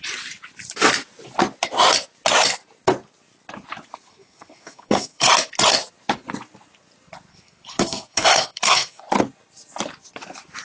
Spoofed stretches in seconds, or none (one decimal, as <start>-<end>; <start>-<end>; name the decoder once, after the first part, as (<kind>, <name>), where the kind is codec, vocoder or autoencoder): 4.1-5.3 (codec, SNAC); 7.3-9.0